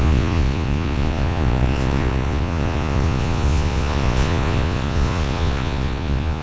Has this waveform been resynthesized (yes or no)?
yes